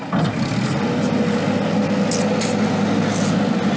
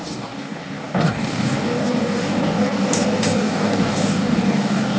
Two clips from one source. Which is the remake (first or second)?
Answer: second